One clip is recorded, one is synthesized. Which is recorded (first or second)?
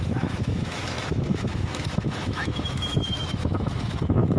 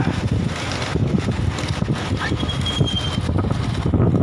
second